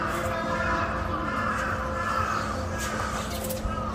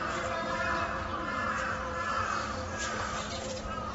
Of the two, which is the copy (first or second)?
second